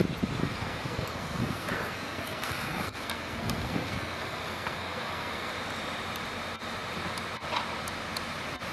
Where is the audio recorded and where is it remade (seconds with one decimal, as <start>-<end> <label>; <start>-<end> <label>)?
0.0-0.4 recorded; 0.4-5.5 remade; 5.5-8.7 recorded